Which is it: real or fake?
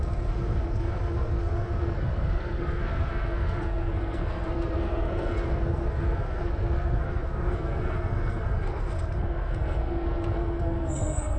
fake